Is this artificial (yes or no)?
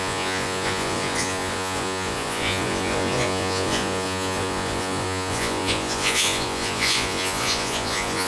yes